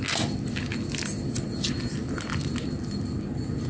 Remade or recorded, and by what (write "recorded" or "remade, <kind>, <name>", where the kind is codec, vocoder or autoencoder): recorded